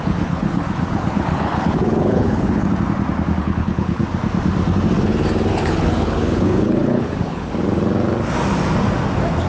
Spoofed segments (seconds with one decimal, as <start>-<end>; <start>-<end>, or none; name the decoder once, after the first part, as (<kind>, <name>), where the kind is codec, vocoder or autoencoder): 0.0-2.7 (codec, HILCodec); 3.4-4.0; 5.5-7.5